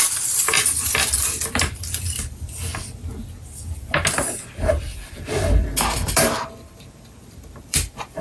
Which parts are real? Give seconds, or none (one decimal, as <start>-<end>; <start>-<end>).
2.7-4.8